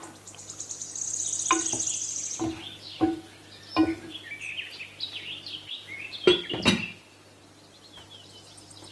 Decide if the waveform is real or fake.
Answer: real